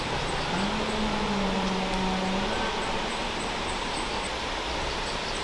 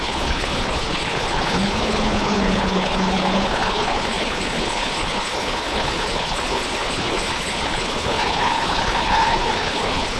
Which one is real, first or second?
first